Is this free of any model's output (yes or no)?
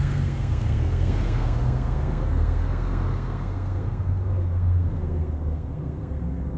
no